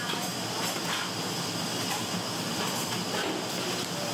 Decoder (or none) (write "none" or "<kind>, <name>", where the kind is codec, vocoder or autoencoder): none